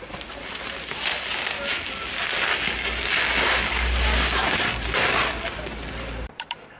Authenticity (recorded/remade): recorded